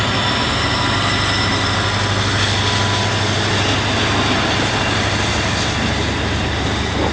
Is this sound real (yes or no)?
yes